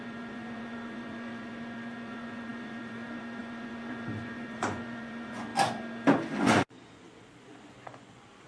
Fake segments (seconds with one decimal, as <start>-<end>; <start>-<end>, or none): 0.0-5.5; 6.4-8.5